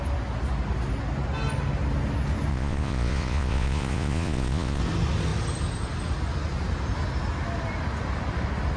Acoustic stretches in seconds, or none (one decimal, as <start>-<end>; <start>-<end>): 0.0-2.5; 4.8-8.8